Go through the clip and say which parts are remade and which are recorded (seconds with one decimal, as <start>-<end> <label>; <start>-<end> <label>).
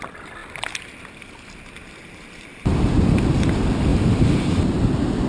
0.0-2.5 recorded; 2.5-3.3 remade; 3.3-3.9 recorded; 3.9-4.8 remade; 4.8-5.3 recorded